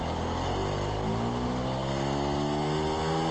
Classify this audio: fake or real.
real